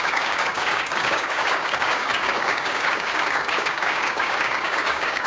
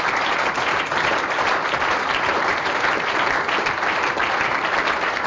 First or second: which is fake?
first